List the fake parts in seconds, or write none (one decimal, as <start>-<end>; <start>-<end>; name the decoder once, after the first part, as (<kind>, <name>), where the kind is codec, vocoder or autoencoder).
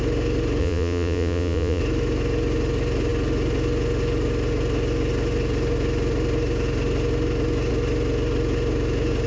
0.6-1.8 (vocoder, Vocos)